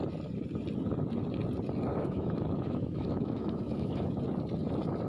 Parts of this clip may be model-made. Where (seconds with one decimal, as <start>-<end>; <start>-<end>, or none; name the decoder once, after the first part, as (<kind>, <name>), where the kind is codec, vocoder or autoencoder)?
1.9-4.2 (autoencoder, DAC-VAE)